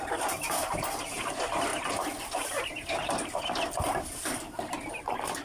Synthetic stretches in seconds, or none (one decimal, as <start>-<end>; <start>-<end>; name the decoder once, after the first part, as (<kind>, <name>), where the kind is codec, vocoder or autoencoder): 0.0-1.7 (vocoder, BigVGAN v2); 4.9-5.4